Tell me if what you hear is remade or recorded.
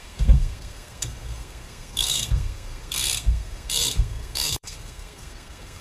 remade